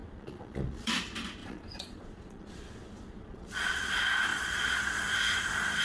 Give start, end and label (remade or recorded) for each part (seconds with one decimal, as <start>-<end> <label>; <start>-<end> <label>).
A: 0.0-0.9 remade; 0.9-1.4 recorded; 1.4-3.9 remade; 3.9-4.3 recorded; 4.3-5.0 remade; 5.0-5.8 recorded